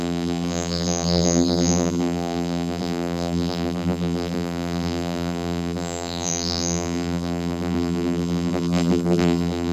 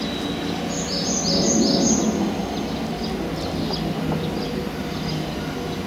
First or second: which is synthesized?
first